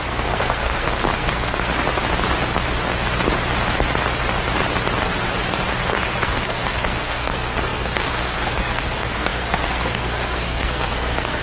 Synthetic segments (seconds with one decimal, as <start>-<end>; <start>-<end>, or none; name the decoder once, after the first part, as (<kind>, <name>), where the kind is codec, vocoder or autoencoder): 0.0-1.7 (codec, SNAC); 5.9-11.4